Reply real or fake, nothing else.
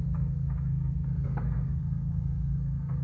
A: fake